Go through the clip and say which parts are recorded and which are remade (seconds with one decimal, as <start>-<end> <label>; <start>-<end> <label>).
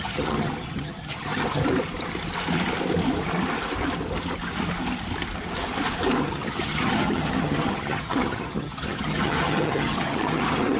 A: 0.0-1.6 remade; 1.6-6.2 recorded; 6.2-10.8 remade